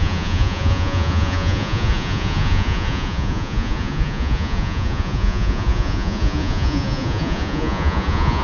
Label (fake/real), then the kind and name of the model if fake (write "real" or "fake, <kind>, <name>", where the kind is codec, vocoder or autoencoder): fake, vocoder, Vocos